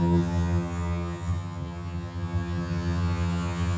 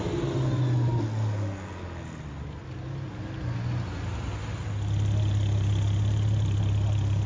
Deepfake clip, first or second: first